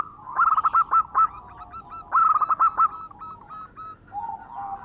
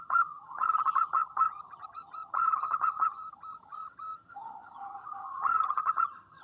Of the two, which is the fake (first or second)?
second